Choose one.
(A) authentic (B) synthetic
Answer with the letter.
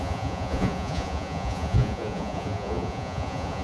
B